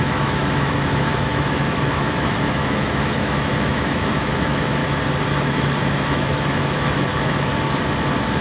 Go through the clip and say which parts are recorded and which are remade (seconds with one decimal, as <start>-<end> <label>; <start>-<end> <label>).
0.0-4.8 remade; 4.8-5.4 recorded; 5.4-7.5 remade; 7.5-8.4 recorded